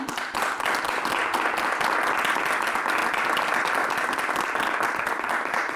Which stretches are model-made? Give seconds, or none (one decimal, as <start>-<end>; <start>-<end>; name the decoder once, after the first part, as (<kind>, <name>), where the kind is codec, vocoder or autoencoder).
none